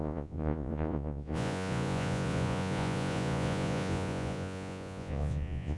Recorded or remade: remade